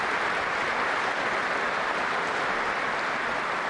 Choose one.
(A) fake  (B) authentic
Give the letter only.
B